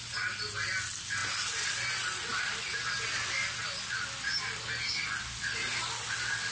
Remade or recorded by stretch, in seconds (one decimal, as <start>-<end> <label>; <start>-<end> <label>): 0.0-1.2 recorded; 1.2-1.7 remade; 1.7-6.5 recorded